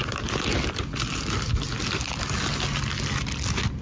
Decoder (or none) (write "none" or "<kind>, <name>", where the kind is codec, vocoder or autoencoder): none